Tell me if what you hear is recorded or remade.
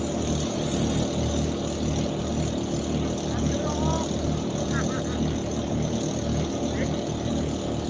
recorded